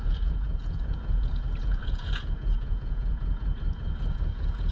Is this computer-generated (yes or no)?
yes